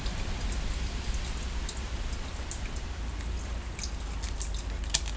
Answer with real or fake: real